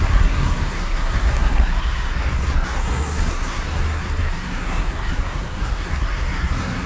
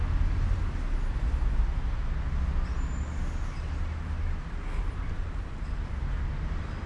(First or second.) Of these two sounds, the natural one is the second